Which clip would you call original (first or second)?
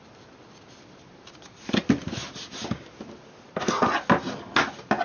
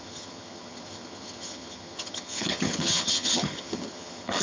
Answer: first